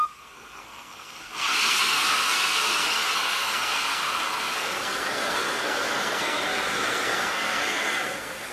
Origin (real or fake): fake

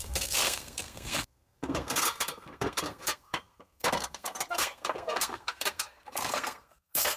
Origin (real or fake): fake